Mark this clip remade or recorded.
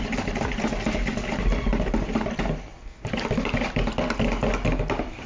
recorded